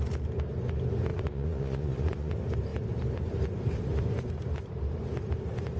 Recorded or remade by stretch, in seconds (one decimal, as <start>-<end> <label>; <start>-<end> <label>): 0.0-1.1 recorded; 1.1-2.3 remade; 2.3-5.8 recorded